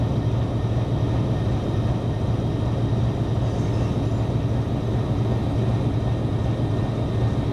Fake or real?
real